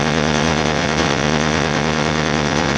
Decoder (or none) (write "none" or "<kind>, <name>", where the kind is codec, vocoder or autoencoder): vocoder, WaveNeXt